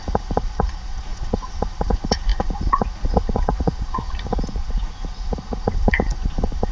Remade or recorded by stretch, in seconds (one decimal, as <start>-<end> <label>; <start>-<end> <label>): 0.0-6.7 remade